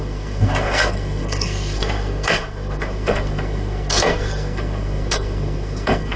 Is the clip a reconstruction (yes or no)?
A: yes